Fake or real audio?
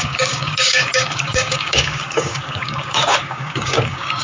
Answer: fake